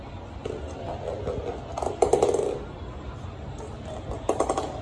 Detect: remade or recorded recorded